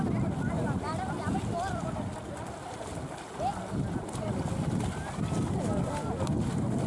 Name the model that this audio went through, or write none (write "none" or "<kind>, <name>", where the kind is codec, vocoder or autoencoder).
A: none